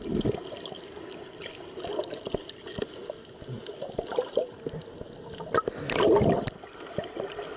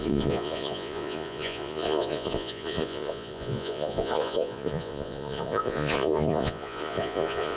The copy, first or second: second